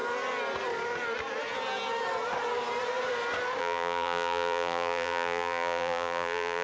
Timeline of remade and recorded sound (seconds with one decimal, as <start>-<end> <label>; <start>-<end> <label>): 0.0-3.6 recorded; 3.6-6.6 remade